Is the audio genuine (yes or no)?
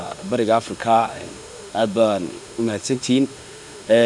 no